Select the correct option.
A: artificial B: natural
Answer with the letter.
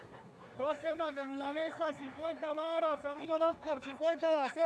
A